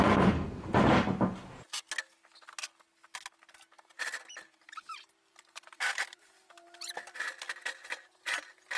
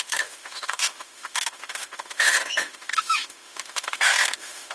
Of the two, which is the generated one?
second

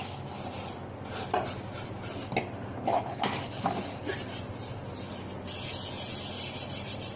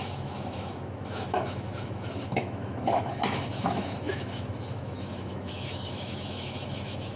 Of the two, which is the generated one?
second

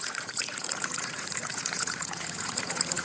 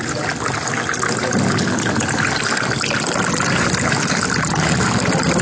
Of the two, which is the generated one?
first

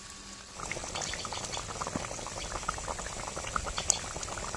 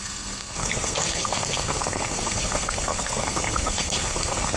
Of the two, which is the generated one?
second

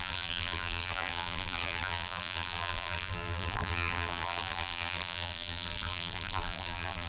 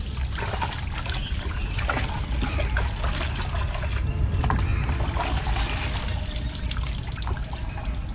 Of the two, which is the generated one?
first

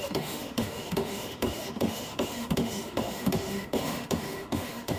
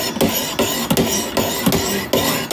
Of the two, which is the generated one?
first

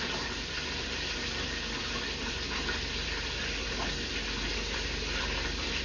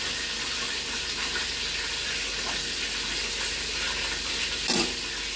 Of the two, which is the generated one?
first